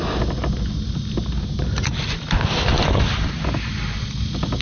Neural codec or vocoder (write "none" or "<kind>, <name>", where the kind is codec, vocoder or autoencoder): none